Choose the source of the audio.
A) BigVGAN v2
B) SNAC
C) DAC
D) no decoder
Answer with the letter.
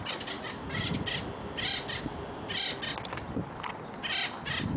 D